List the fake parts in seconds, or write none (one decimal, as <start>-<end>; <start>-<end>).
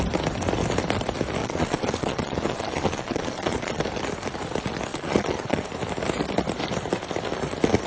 1.4-3.8; 4.9-5.6